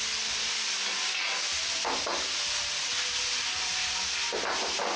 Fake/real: real